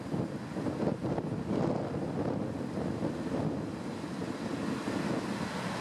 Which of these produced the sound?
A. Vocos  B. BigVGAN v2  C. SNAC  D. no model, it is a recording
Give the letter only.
D